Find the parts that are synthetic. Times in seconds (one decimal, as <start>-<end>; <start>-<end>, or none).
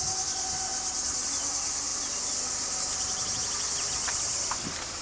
none